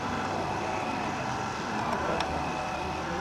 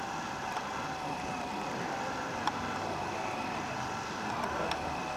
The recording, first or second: first